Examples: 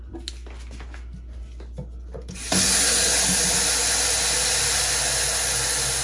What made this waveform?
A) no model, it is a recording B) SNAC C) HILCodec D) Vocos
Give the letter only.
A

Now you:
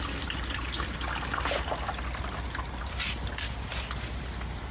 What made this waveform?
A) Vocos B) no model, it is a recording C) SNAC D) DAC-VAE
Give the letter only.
B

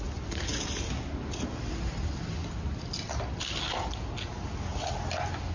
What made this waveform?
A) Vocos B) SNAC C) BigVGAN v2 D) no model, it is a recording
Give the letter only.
D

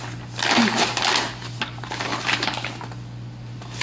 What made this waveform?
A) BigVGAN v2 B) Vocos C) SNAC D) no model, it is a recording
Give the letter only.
D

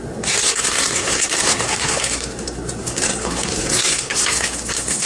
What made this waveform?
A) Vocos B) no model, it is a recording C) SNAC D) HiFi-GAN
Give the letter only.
C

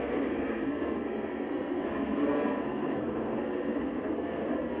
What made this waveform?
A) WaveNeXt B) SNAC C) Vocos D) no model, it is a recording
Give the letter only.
B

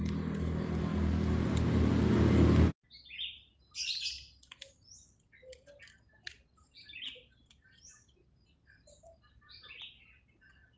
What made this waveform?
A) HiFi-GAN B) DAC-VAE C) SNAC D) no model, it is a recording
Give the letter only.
D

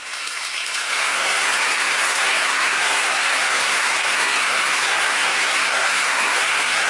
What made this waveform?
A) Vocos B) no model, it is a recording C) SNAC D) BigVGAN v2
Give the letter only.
C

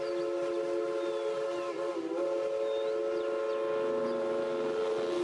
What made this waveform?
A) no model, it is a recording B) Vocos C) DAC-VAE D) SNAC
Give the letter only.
A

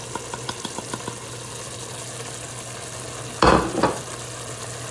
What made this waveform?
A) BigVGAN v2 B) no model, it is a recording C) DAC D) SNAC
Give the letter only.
B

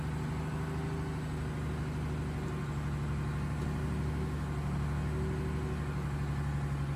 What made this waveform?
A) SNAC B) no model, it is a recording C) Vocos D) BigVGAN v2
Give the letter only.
B